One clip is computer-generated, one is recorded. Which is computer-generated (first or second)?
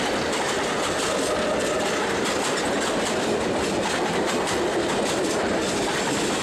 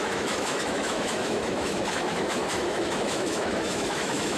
second